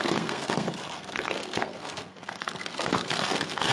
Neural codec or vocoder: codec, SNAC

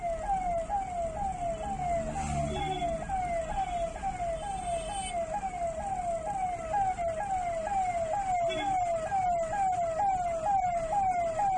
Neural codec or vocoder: none